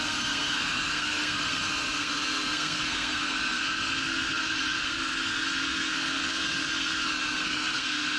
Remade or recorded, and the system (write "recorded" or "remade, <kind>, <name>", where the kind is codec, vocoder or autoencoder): remade, codec, SNAC